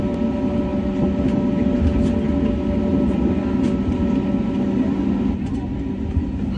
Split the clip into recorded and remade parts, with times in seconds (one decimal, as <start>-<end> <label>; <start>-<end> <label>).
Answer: 0.0-6.6 recorded